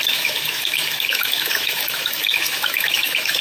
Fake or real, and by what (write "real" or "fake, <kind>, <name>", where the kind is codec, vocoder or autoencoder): fake, autoencoder, DAC-VAE